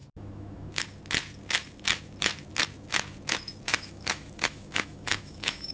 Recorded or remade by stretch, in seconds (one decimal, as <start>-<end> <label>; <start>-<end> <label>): 0.0-0.8 remade; 0.8-3.7 recorded; 3.7-5.7 remade